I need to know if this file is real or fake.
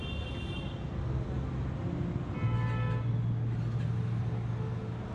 real